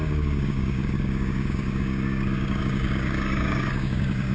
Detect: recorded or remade remade